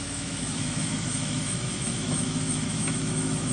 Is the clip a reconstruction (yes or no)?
yes